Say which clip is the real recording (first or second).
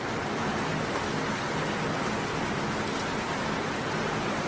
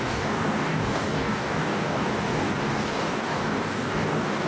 first